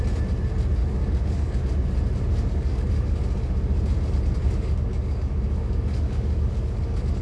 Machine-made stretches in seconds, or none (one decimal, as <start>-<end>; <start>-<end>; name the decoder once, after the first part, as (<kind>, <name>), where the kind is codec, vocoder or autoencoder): 0.8-1.6 (codec, DAC); 2.3-3.2; 4.4-7.2